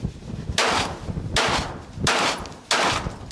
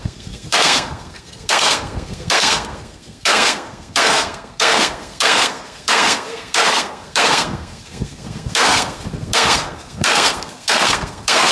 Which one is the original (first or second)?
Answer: first